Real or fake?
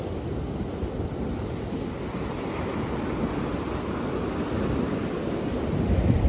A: real